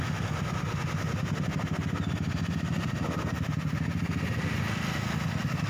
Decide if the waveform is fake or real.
real